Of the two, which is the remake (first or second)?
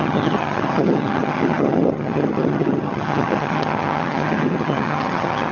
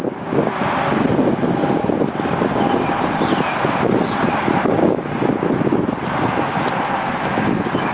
first